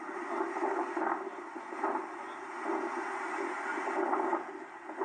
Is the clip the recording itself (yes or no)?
no